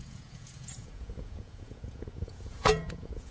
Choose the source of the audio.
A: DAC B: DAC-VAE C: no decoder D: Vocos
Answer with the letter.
D